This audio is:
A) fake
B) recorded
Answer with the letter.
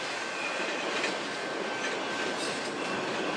B